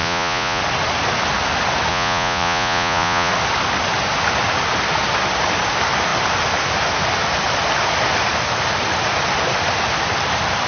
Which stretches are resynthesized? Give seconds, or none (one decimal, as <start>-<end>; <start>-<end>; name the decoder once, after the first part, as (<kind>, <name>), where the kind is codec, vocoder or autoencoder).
0.0-0.6 (vocoder, Vocos); 1.9-3.3